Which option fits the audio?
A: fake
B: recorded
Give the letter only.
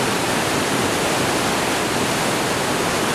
B